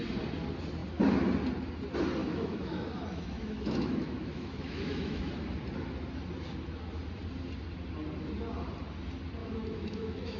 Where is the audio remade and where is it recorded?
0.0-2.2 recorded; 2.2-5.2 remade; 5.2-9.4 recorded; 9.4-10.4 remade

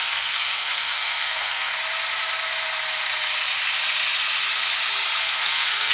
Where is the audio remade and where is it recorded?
0.0-1.7 remade; 1.7-5.2 recorded; 5.2-5.9 remade